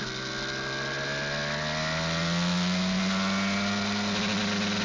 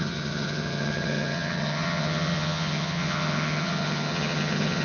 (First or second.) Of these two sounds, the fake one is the second